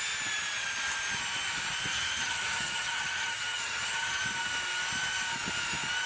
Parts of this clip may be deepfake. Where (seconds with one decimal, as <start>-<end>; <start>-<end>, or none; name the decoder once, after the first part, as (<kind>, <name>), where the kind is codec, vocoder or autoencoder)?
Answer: 1.9-4.2 (vocoder, HiFi-GAN)